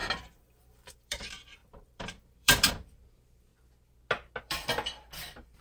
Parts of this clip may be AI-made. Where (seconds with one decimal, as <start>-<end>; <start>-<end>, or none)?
0.6-3.5; 4.4-5.6